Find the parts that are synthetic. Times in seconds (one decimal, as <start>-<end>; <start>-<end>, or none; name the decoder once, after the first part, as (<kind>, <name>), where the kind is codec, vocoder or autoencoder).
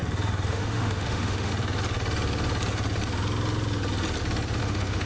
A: 0.5-1.5 (autoencoder, DAC-VAE); 4.6-5.1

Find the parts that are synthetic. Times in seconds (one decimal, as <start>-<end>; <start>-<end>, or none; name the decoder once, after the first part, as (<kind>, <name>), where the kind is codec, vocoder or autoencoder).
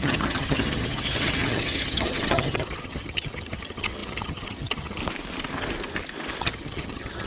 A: 0.0-5.0 (vocoder, HiFi-GAN); 6.4-7.3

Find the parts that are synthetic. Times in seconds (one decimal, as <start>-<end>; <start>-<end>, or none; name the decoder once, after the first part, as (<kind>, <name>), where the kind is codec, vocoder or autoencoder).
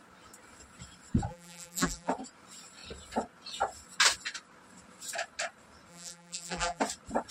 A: 1.3-2.1 (vocoder, BigVGAN v2); 5.9-6.8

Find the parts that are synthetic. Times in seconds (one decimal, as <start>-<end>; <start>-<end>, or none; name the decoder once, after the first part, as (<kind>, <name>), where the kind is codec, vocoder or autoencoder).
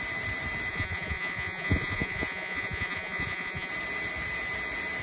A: 0.7-3.7 (vocoder, Vocos)